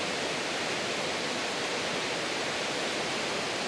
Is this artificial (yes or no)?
no